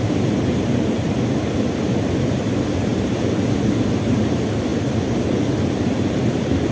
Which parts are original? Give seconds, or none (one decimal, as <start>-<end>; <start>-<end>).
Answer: 4.7-5.6

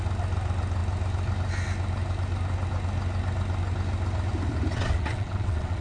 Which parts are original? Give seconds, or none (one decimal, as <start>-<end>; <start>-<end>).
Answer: 0.0-4.7